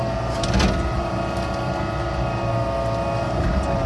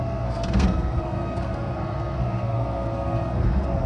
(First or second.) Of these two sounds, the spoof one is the second